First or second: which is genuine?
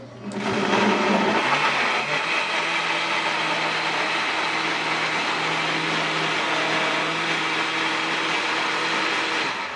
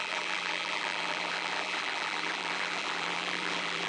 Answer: first